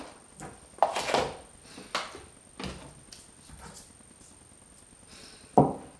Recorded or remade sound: recorded